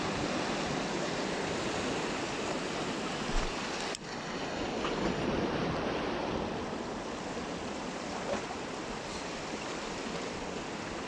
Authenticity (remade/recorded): recorded